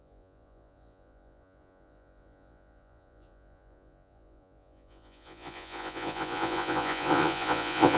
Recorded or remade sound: remade